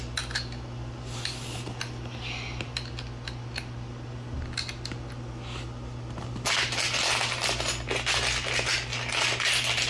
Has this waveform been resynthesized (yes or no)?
no